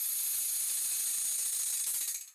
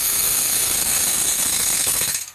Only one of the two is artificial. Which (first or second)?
second